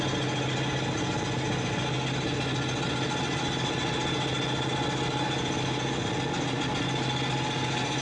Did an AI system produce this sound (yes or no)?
no